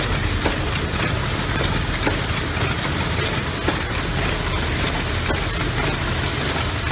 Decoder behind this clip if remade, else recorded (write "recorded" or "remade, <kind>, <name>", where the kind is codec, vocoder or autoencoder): recorded